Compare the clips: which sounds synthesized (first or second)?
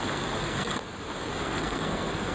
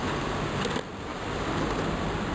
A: first